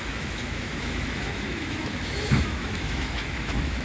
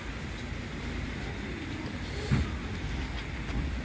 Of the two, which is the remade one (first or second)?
first